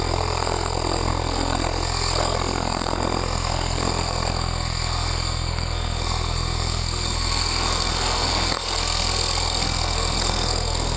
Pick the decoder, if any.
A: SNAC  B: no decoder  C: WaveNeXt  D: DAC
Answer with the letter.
A